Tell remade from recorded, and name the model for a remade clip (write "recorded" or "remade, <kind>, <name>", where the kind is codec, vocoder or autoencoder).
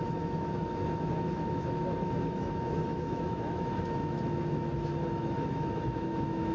remade, autoencoder, DAC-VAE